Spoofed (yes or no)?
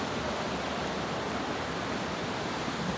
no